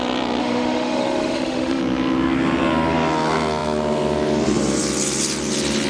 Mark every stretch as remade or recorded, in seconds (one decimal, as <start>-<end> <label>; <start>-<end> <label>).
0.0-0.4 recorded; 0.4-1.8 remade; 1.8-5.9 recorded

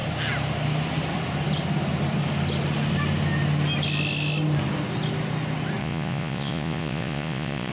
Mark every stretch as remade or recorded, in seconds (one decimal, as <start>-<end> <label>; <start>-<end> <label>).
0.0-5.8 recorded; 5.8-7.7 remade

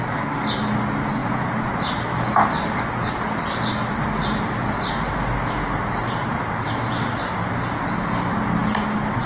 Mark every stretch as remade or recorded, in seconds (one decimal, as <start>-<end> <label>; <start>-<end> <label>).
0.0-1.2 recorded; 1.2-1.7 remade; 1.7-9.3 recorded

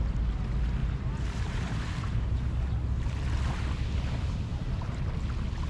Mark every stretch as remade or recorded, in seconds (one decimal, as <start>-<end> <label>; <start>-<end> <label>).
0.0-0.8 recorded; 0.8-2.4 remade; 2.4-4.5 recorded; 4.5-5.0 remade; 5.0-5.7 recorded

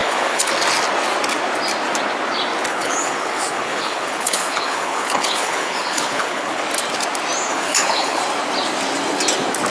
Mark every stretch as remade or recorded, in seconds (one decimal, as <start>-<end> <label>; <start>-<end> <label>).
0.0-0.5 remade; 0.5-2.7 recorded; 2.7-6.6 remade; 6.6-7.5 recorded; 7.5-8.2 remade; 8.2-9.7 recorded

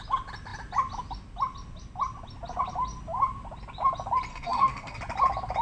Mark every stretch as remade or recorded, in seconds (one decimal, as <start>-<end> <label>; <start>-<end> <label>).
0.0-4.3 recorded; 4.3-5.0 remade; 5.0-5.6 recorded

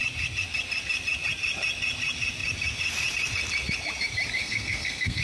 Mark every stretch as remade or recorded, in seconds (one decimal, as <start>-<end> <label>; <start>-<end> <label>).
0.0-4.4 recorded; 4.4-5.2 remade

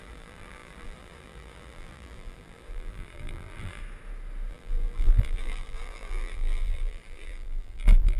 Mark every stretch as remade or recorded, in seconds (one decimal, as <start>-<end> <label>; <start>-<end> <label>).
0.0-3.8 remade; 3.8-4.5 recorded; 4.5-8.2 remade